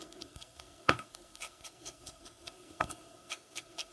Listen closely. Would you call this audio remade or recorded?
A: remade